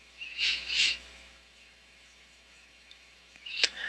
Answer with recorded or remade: remade